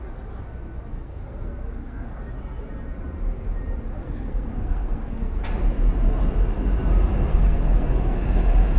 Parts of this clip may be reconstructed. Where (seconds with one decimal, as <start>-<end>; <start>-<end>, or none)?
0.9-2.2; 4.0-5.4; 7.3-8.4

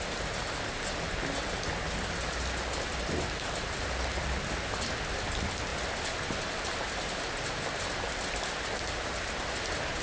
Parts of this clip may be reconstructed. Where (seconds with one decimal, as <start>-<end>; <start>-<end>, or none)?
none

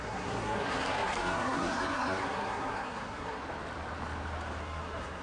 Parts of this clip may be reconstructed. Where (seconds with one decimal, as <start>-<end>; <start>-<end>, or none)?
0.0-3.4; 4.6-5.2

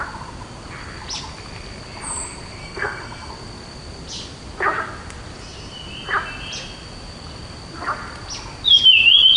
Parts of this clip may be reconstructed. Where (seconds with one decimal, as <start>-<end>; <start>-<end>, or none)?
2.6-3.3

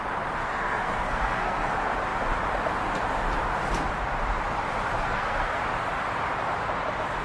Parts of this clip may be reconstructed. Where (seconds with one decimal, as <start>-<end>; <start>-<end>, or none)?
0.4-1.7; 5.0-5.6